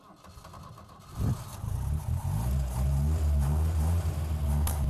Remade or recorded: recorded